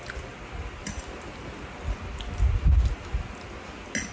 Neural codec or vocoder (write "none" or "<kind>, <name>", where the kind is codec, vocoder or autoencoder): none